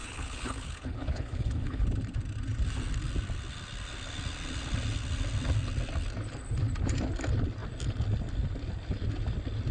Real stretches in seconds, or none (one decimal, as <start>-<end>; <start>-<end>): 1.8-9.7